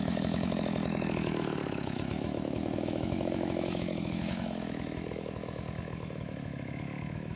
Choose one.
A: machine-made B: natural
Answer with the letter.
A